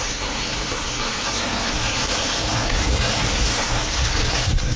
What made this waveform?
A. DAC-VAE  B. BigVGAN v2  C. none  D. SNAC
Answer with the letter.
D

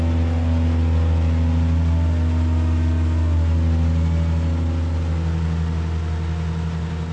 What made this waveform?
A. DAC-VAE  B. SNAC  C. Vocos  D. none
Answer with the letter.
D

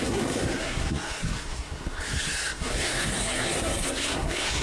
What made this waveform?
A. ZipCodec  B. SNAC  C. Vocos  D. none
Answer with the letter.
B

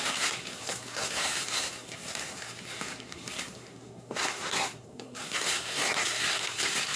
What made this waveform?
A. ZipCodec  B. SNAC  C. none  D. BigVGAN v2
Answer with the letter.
B